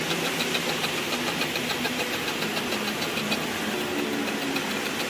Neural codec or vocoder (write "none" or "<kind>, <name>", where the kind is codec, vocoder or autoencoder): none